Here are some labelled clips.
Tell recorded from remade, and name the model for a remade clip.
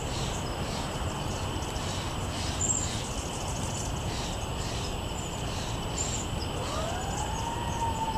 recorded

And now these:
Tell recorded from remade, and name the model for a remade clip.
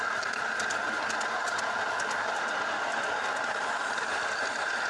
recorded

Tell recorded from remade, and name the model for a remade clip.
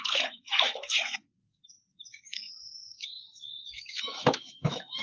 remade, autoencoder, DAC-VAE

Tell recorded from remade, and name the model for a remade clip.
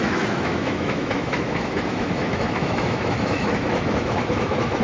remade, autoencoder, DAC-VAE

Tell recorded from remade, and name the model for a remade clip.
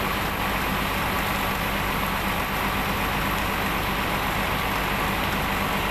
recorded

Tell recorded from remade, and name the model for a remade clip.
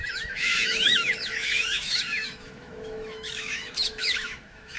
remade, autoencoder, DAC-VAE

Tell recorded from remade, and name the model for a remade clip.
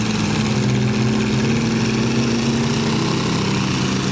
recorded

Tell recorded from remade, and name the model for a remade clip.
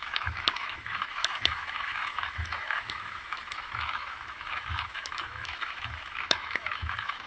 remade, autoencoder, DAC-VAE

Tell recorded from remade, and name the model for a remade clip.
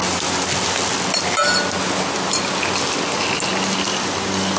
recorded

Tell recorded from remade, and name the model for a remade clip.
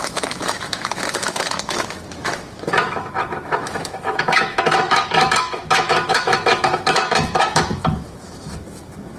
remade, autoencoder, DAC-VAE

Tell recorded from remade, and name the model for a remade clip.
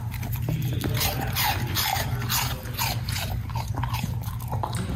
recorded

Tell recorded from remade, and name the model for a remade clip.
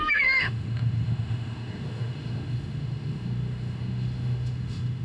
remade, autoencoder, DAC-VAE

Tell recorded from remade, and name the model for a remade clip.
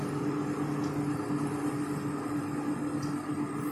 recorded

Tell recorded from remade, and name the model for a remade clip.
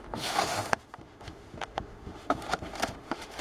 remade, autoencoder, DAC-VAE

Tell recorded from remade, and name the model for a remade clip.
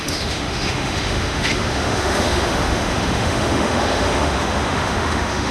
remade, autoencoder, DAC-VAE